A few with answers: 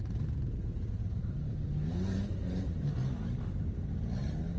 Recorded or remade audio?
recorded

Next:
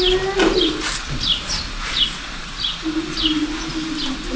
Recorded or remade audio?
recorded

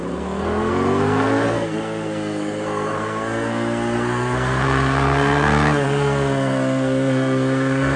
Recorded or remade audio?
remade